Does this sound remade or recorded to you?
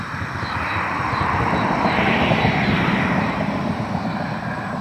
remade